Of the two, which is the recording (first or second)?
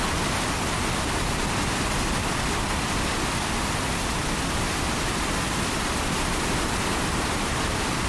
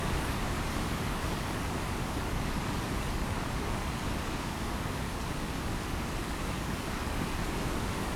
first